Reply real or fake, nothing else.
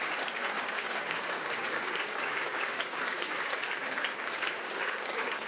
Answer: fake